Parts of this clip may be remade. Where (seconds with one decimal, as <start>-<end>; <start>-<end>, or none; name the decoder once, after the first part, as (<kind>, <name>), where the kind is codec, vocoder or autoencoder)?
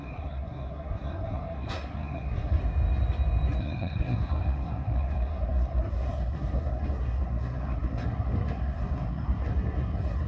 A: 0.0-2.6 (codec, SNAC); 3.6-10.3